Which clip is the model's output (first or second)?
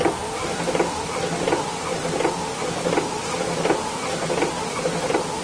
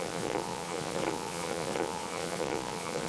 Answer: second